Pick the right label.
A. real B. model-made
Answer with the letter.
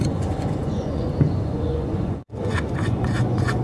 B